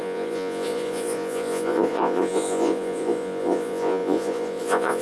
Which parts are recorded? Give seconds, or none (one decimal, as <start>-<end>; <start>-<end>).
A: none